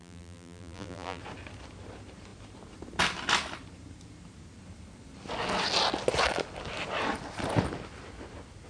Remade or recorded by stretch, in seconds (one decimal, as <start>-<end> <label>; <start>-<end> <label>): 0.0-1.2 remade; 1.2-8.7 recorded